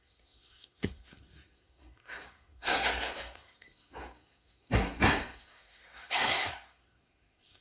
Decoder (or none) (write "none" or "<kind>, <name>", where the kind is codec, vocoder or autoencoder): codec, SNAC